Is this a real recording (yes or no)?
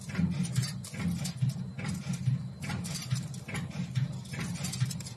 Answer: yes